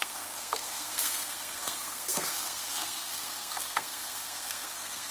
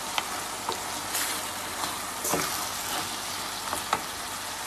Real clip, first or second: second